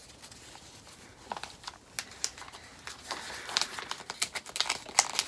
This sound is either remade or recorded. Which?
recorded